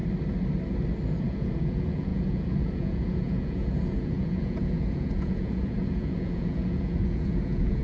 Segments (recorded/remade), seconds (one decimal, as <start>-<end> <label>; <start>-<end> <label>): 0.0-1.1 recorded; 1.1-7.8 remade